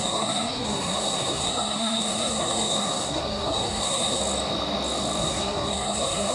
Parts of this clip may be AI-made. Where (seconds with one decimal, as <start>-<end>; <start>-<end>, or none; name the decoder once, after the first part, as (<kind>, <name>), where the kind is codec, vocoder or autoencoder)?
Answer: 0.0-4.2 (codec, SNAC); 5.2-6.3